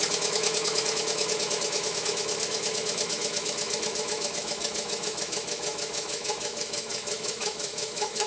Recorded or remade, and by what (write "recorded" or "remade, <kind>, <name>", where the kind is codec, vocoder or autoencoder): remade, autoencoder, DAC-VAE